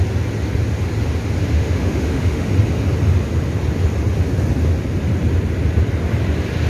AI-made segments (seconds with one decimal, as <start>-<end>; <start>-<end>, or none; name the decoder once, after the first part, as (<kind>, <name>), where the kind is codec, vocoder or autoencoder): 1.4-2.5 (autoencoder, DAC-VAE)